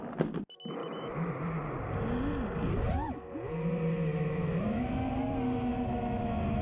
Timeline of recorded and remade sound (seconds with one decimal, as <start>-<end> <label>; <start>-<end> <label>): 0.0-0.8 recorded; 0.8-1.3 remade; 1.3-4.1 recorded; 4.1-5.1 remade; 5.1-5.7 recorded; 5.7-6.6 remade